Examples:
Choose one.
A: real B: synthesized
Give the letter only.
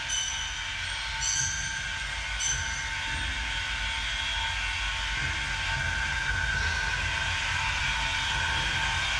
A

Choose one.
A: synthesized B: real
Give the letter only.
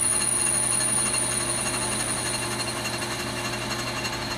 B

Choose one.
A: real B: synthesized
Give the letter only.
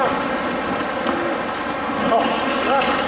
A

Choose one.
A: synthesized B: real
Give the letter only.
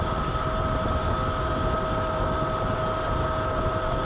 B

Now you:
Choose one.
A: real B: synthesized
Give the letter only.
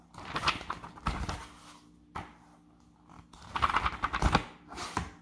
A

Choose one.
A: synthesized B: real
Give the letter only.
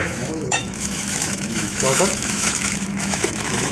A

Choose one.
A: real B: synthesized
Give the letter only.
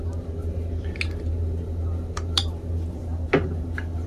A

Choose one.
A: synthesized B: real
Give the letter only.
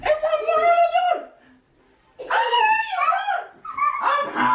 B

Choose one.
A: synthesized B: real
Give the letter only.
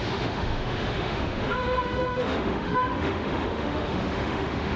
A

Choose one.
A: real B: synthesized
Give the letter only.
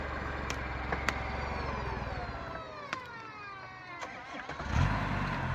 A